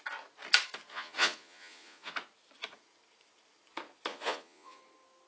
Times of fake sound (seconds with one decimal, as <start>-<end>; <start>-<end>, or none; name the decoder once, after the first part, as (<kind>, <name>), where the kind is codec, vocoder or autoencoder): 0.9-2.1 (vocoder, Vocos); 4.1-4.8